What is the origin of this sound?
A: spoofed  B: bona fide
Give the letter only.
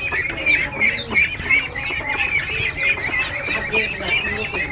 B